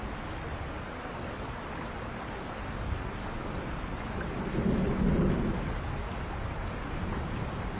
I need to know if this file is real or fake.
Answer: real